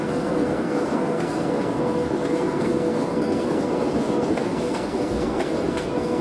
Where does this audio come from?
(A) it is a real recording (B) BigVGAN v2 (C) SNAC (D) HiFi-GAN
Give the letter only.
C